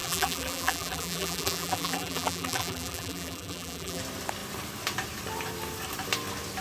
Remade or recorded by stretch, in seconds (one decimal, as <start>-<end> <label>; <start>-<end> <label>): 0.0-4.0 remade; 4.0-6.6 recorded